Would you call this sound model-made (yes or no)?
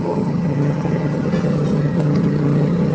yes